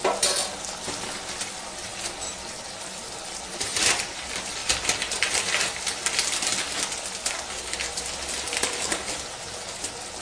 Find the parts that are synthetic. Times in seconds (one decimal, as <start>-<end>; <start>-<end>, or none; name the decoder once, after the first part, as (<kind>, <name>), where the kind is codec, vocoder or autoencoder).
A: none